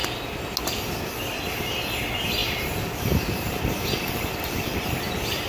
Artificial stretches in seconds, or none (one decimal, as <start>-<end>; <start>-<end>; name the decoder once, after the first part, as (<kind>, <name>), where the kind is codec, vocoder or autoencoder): 2.4-5.1 (vocoder, BigVGAN v2)